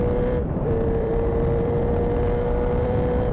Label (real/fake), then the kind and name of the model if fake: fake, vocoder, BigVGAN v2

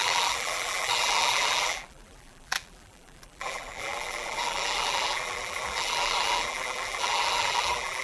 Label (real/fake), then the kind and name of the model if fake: fake, vocoder, BigVGAN v2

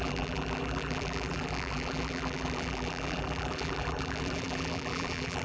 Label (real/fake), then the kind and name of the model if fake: fake, vocoder, BigVGAN v2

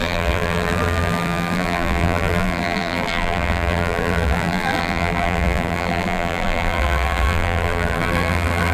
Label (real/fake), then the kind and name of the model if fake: fake, vocoder, BigVGAN v2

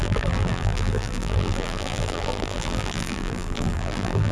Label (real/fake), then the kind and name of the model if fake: fake, vocoder, BigVGAN v2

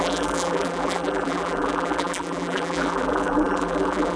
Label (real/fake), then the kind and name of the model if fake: fake, vocoder, BigVGAN v2